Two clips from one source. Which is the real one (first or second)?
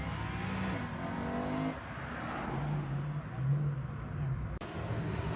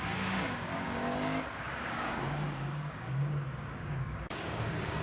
first